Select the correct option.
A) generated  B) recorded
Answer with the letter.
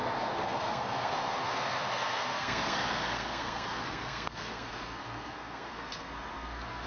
A